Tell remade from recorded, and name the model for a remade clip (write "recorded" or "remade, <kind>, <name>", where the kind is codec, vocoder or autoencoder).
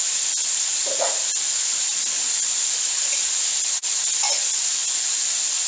recorded